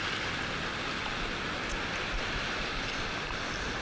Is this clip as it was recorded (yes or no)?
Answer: yes